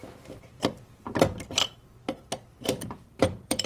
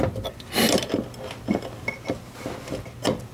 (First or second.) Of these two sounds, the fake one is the first